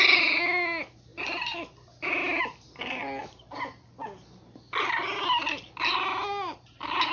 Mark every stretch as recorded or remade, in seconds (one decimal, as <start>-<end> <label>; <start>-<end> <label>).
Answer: 0.0-7.1 recorded